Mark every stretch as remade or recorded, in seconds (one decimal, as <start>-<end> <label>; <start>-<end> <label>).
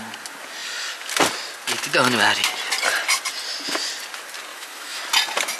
0.0-4.5 recorded; 4.5-5.0 remade; 5.0-5.6 recorded